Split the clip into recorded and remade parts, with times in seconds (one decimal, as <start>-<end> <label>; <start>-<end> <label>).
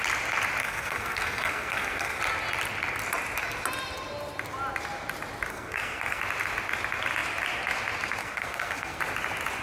0.0-0.6 recorded; 0.6-2.2 remade; 2.2-5.5 recorded; 5.5-6.2 remade; 6.2-8.2 recorded; 8.2-9.0 remade; 9.0-9.6 recorded